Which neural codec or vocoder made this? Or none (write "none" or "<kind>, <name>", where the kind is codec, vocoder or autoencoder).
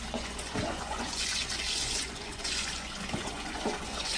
vocoder, Vocos